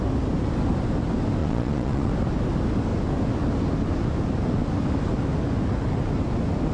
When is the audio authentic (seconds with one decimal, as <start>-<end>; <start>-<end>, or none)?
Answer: 0.0-1.4; 2.1-6.7